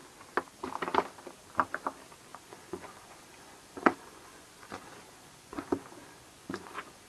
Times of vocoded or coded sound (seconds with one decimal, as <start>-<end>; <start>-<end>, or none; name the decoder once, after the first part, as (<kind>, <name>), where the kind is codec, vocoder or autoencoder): 2.3-5.6 (vocoder, Vocos); 6.0-7.1